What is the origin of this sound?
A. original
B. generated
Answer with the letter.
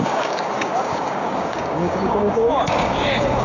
B